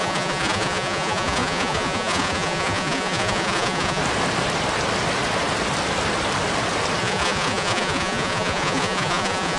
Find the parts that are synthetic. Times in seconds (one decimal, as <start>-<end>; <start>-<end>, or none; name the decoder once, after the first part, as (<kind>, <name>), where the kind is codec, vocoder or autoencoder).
0.0-4.0 (vocoder, Vocos); 7.0-9.6